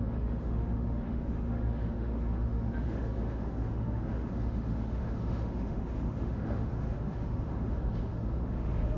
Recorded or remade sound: remade